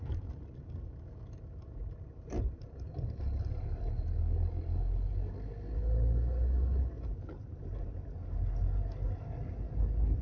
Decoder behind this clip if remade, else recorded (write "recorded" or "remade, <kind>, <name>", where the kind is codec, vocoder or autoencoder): recorded